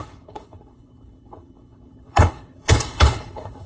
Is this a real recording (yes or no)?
no